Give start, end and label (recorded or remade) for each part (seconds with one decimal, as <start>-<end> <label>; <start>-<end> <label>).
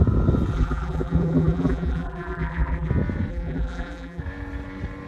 0.0-0.5 recorded; 0.5-2.9 remade; 2.9-3.3 recorded; 3.3-4.2 remade; 4.2-5.1 recorded